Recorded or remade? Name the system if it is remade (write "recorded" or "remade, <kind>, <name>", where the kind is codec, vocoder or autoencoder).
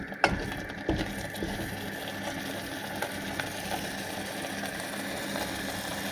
recorded